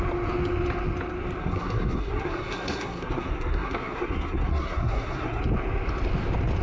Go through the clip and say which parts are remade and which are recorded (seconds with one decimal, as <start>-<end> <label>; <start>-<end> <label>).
0.0-1.4 recorded; 1.4-5.4 remade; 5.4-6.6 recorded